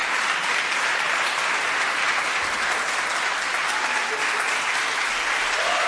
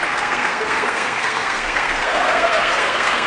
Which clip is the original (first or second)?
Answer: first